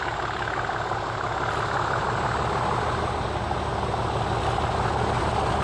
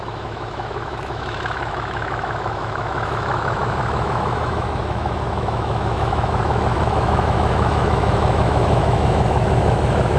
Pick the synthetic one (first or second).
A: second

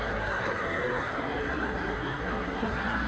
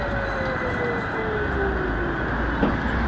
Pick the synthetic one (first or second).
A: first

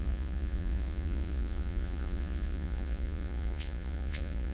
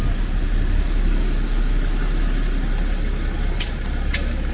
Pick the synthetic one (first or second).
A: first